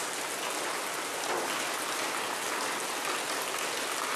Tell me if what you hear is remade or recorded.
recorded